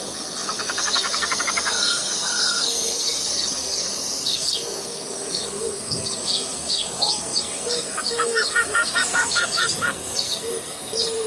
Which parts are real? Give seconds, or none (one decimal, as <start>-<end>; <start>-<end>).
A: none